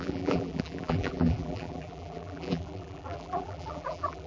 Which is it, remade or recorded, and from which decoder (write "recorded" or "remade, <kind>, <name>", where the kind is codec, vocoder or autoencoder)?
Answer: remade, vocoder, BigVGAN v2